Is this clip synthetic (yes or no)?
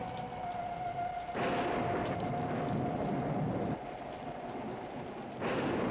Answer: no